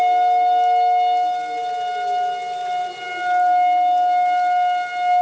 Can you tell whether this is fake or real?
real